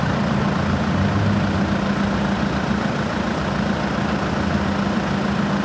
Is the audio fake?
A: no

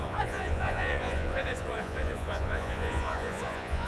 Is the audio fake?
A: yes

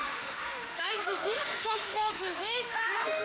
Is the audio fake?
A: yes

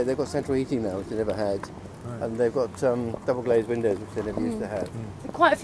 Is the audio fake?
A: no